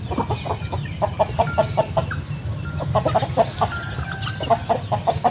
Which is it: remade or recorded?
recorded